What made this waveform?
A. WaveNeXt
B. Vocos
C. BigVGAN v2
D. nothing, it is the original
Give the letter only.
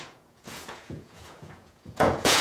B